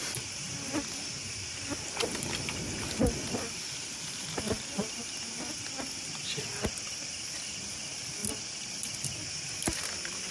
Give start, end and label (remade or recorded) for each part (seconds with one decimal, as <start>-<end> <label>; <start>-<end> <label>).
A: 0.0-10.3 recorded